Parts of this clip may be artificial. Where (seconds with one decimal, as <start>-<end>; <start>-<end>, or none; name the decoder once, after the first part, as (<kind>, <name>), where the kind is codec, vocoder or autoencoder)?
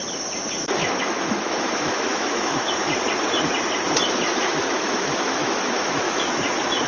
0.8-2.7 (autoencoder, DAC-VAE); 4.3-6.3